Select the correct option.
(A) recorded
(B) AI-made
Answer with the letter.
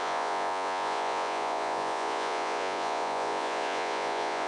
B